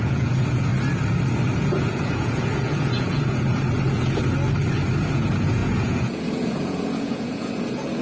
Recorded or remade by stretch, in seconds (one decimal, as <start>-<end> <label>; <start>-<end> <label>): 0.0-0.7 remade; 0.7-1.5 recorded; 1.5-4.2 remade; 4.2-5.0 recorded; 5.0-8.0 remade